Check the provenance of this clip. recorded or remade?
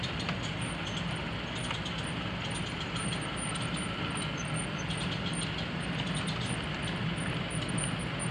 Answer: recorded